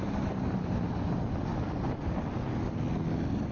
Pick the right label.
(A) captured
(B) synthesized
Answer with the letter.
A